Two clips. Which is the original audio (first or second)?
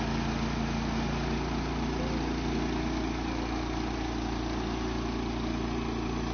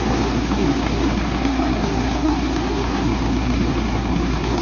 first